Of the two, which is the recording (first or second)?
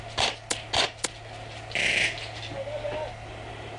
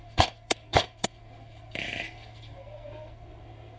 first